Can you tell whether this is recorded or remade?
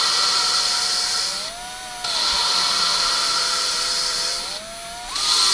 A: recorded